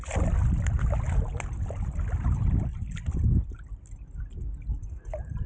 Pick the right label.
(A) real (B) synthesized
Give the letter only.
A